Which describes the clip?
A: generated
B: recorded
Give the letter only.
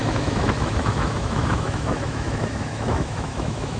A